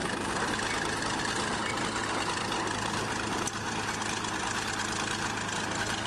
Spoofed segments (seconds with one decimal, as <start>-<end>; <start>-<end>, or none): none